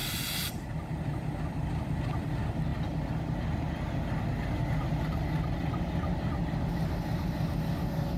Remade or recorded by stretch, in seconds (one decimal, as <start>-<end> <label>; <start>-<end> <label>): 0.0-1.4 remade; 1.4-8.2 recorded